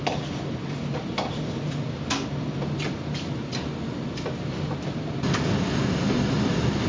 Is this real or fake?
real